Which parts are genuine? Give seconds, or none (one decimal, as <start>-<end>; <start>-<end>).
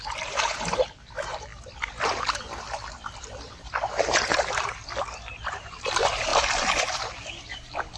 none